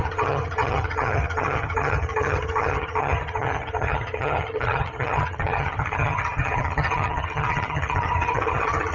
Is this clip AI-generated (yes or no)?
yes